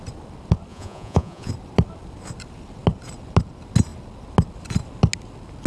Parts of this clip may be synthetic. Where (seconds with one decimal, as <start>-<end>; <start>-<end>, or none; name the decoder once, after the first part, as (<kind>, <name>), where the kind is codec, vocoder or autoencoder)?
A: 0.7-1.5 (vocoder, Vocos)